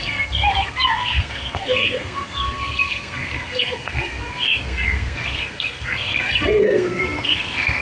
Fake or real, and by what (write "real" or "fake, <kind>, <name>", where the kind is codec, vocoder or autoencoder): fake, codec, SNAC